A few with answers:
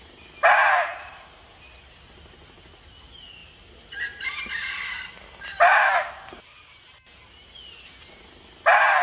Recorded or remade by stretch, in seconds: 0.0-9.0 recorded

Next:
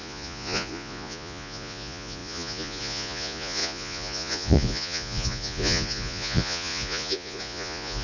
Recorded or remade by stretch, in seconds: 0.0-8.0 remade